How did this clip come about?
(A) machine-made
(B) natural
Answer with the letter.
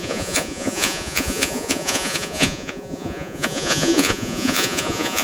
A